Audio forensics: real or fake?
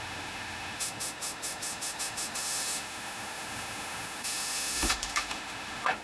fake